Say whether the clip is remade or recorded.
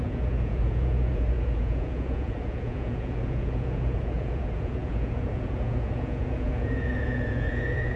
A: remade